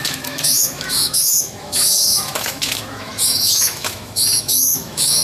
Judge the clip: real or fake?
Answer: fake